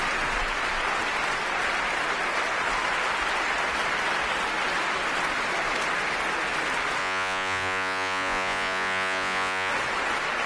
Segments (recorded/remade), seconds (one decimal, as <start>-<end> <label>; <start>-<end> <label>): 0.0-7.0 recorded; 7.0-9.7 remade; 9.7-10.5 recorded